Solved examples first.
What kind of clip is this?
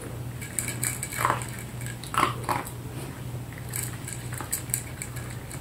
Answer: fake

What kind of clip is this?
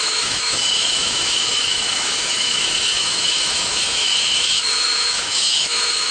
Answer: fake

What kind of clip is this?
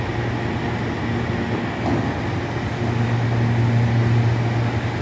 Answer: real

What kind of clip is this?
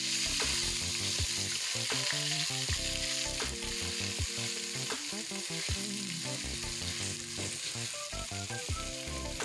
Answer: real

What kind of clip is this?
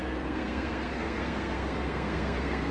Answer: fake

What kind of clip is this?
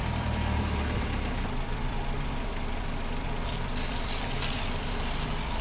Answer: fake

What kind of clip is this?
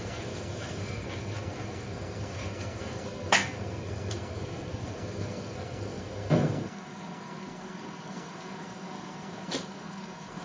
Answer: fake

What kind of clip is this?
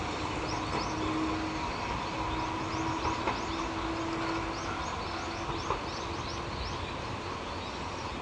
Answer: real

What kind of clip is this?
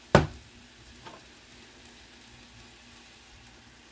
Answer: real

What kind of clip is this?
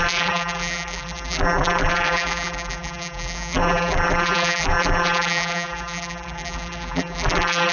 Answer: fake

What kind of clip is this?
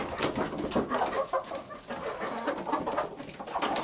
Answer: real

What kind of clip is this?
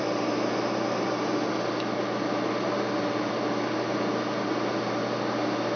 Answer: real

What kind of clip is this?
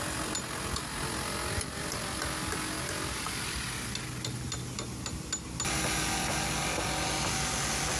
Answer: real